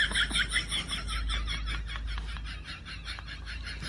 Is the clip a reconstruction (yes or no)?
no